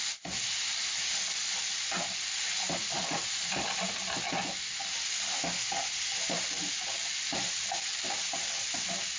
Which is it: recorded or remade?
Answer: recorded